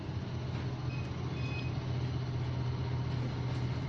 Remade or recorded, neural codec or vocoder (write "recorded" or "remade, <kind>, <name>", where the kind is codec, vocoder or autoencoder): recorded